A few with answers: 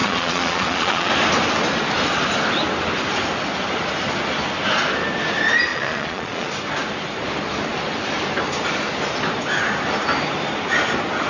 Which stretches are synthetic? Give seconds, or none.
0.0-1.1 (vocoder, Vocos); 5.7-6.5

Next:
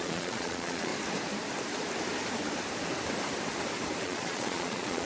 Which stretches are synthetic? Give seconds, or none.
0.0-0.9 (vocoder, Vocos); 4.0-5.1

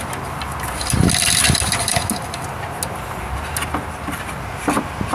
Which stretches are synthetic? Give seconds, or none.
none

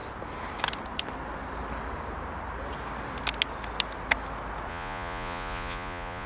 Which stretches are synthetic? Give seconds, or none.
4.7-6.3 (vocoder, Vocos)

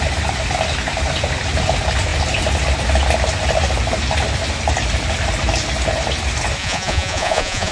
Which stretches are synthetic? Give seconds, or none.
6.6-7.7 (vocoder, Vocos)

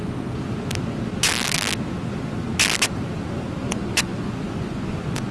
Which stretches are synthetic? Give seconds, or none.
3.6-5.3 (vocoder, Vocos)